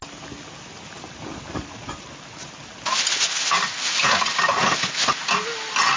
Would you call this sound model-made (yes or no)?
no